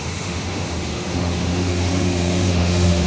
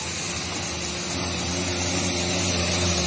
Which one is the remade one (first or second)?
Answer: first